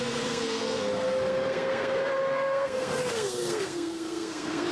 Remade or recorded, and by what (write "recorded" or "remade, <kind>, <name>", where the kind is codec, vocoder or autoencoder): remade, codec, SNAC